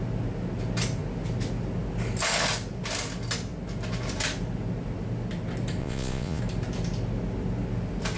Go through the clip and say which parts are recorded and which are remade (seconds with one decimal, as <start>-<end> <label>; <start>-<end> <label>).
0.0-5.8 recorded; 5.8-6.4 remade; 6.4-8.2 recorded